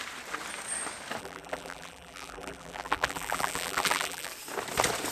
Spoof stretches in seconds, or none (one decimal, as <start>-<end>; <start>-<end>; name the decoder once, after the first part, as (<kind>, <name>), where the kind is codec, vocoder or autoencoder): 1.2-4.3 (vocoder, BigVGAN v2)